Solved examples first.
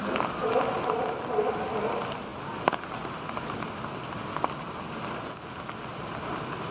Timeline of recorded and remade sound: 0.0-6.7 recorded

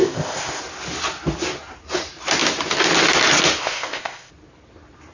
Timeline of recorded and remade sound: 0.0-0.6 remade; 0.6-3.6 recorded; 3.6-4.3 remade; 4.3-5.1 recorded

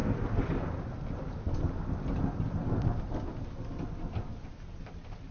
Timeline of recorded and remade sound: 0.0-5.3 recorded

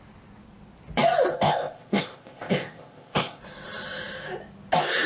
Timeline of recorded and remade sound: 0.0-1.3 recorded; 1.3-3.4 remade; 3.4-5.1 recorded

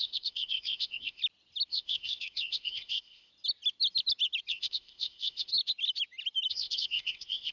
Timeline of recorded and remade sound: 0.0-1.2 remade; 1.2-1.7 recorded; 1.7-3.3 remade; 3.3-4.5 recorded; 4.5-5.5 remade; 5.5-6.5 recorded; 6.5-7.5 remade

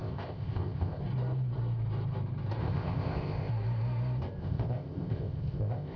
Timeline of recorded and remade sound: 0.0-1.0 remade; 1.0-2.6 recorded; 2.6-3.5 remade; 3.5-4.4 recorded; 4.4-6.0 remade